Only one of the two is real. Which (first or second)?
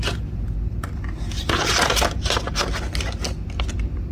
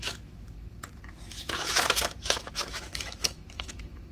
first